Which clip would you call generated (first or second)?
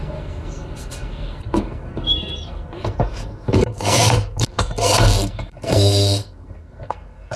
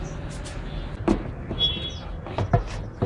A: first